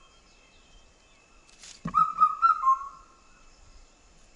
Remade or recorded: remade